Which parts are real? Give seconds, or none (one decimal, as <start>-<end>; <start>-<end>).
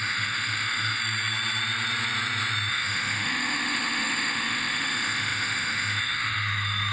1.0-2.7